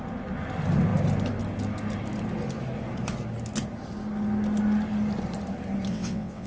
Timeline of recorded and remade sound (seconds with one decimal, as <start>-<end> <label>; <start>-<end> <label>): 0.0-5.9 recorded; 5.9-6.5 remade